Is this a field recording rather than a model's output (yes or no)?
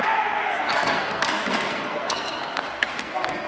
no